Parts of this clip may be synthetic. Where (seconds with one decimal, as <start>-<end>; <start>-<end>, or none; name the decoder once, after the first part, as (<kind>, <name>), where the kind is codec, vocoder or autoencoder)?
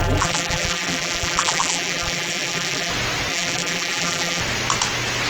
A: 0.0-2.9 (vocoder, BigVGAN v2); 3.3-4.4